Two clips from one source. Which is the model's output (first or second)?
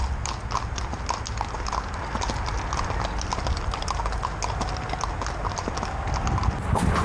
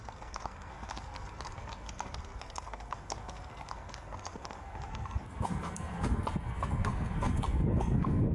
second